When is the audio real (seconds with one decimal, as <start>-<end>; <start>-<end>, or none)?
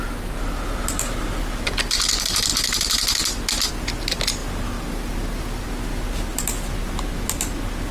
0.0-4.4; 5.7-7.9